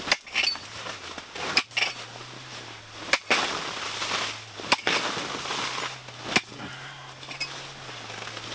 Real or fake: real